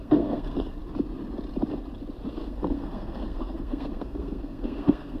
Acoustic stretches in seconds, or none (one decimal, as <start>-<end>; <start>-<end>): 0.8-2.3